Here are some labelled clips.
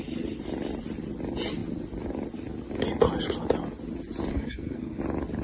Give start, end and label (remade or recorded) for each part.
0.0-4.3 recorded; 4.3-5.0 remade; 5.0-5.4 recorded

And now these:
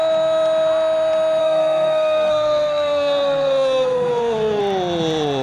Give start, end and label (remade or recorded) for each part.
0.0-1.4 recorded; 1.4-4.6 remade; 4.6-5.4 recorded